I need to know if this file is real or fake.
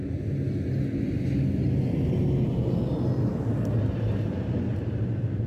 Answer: real